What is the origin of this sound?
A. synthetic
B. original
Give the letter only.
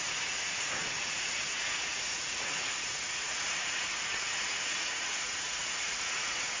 A